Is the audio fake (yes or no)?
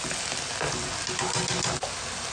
no